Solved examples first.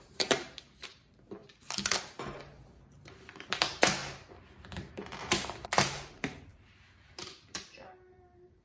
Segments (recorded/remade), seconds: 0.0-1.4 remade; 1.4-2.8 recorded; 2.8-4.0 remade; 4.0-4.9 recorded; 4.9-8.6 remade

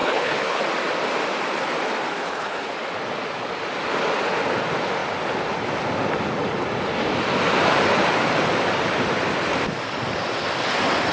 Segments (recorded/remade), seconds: 0.0-0.6 remade; 0.6-2.2 recorded; 2.2-2.7 remade; 2.7-11.1 recorded

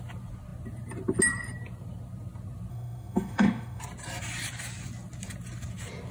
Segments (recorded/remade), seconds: 0.0-2.7 recorded; 2.7-3.8 remade; 3.8-6.1 recorded

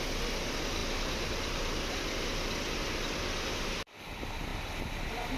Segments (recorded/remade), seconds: 0.0-5.4 recorded